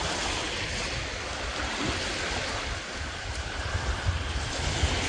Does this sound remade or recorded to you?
recorded